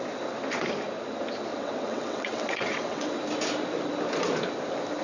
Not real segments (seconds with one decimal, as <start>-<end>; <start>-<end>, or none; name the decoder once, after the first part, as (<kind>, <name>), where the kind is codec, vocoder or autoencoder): 1.5-3.1 (vocoder, WaveNeXt)